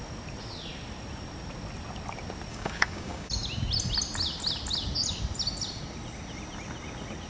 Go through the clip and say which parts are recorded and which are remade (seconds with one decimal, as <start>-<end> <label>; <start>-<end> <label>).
0.0-2.5 recorded; 2.5-3.3 remade; 3.3-7.3 recorded